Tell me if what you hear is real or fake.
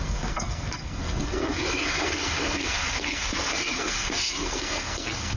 fake